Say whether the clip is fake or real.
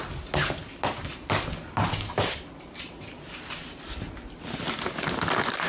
real